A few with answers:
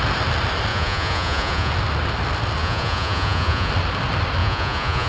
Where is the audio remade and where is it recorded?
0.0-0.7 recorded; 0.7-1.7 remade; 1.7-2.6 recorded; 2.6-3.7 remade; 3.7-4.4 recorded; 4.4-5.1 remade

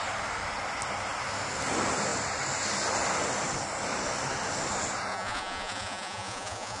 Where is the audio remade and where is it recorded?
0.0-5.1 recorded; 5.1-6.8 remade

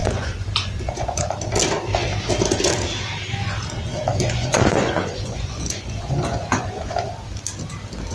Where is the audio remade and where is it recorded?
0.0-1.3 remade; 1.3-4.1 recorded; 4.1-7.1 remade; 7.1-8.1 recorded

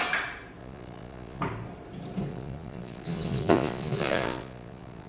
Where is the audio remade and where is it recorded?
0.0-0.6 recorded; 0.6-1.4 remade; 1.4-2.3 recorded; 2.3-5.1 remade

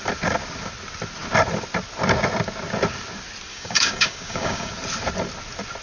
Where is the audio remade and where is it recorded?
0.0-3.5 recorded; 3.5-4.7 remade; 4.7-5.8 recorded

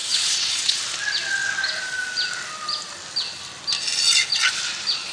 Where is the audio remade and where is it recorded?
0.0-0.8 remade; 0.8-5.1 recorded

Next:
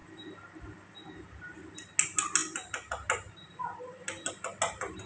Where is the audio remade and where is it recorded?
0.0-5.1 recorded

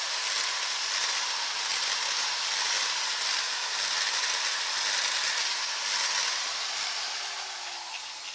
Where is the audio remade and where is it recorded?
0.0-8.3 recorded